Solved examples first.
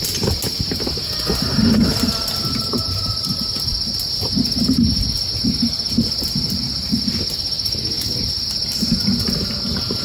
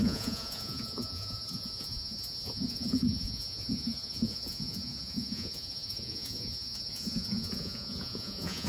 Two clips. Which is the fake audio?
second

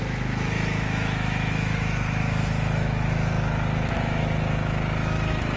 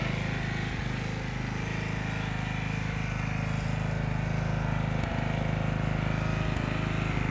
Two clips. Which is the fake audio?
first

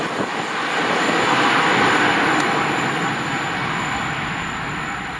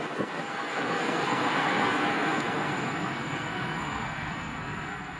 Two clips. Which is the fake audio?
second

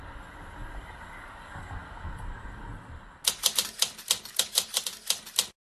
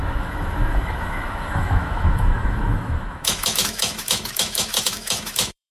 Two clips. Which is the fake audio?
second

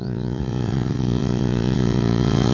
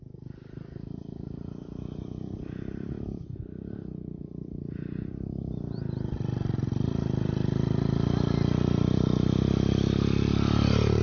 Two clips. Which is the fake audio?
first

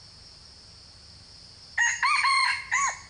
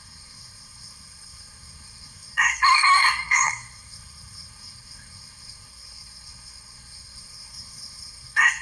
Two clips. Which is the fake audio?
second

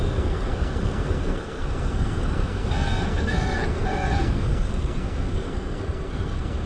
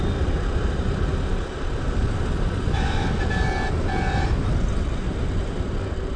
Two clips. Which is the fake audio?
first